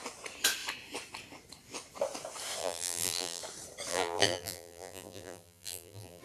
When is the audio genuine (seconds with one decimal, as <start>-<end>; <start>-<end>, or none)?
0.0-2.6; 3.4-3.9